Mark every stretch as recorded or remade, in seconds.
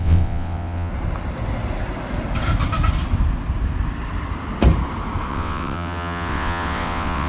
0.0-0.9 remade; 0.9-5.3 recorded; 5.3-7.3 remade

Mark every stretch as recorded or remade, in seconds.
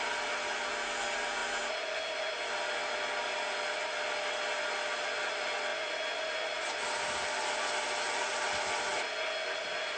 0.0-10.0 recorded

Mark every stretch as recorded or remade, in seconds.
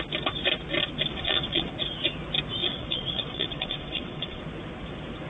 0.0-1.1 recorded; 1.1-1.7 remade; 1.7-2.6 recorded; 2.6-4.4 remade; 4.4-5.3 recorded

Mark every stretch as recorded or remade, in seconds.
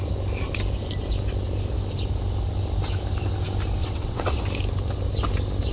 0.0-3.8 recorded; 3.8-4.4 remade; 4.4-5.7 recorded